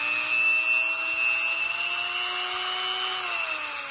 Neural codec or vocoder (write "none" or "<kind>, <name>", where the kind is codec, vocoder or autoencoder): none